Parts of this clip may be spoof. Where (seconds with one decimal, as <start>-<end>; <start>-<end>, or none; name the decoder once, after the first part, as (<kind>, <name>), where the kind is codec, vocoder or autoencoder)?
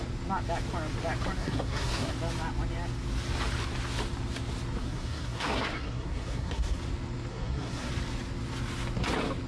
1.4-2.1 (codec, SNAC); 4.8-6.8; 7.3-7.9